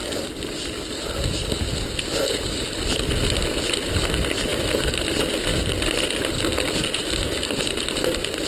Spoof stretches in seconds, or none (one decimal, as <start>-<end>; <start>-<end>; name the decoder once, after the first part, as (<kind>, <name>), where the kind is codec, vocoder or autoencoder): 5.5-6.4 (vocoder, BigVGAN v2); 7.0-7.7

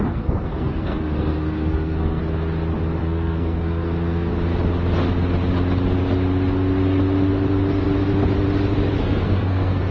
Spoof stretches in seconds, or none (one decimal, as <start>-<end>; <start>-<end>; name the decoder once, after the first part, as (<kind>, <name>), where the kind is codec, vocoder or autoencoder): 0.0-2.2 (codec, SNAC); 3.0-4.3; 9.0-9.9

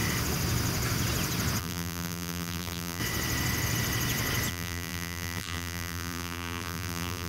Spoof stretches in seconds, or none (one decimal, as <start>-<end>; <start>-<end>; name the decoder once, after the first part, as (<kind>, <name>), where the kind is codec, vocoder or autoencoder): 1.6-3.0 (vocoder, BigVGAN v2); 4.5-7.3

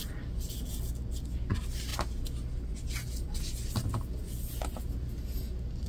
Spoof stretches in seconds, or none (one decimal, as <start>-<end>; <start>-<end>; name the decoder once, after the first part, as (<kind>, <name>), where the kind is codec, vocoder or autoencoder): none

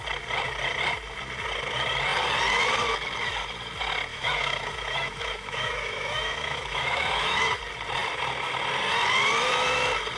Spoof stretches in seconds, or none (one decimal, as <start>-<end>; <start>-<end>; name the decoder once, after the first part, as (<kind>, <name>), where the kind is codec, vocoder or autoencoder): 4.1-7.6 (autoencoder, DAC-VAE)